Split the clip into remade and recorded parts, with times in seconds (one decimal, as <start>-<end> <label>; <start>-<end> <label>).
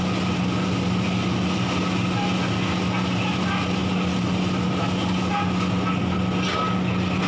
0.0-7.3 recorded